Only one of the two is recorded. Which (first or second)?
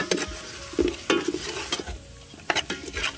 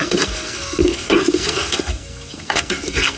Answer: first